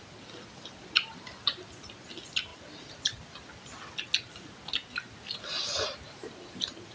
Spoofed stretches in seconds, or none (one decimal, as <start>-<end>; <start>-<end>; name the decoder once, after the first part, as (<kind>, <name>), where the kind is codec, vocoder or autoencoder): none